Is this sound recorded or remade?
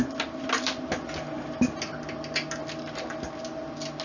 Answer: recorded